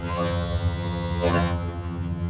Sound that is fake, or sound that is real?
fake